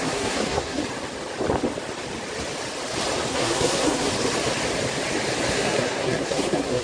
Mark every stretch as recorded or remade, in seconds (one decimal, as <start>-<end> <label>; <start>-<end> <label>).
0.0-0.8 remade; 0.8-3.3 recorded; 3.3-4.1 remade; 4.1-5.5 recorded; 5.5-6.8 remade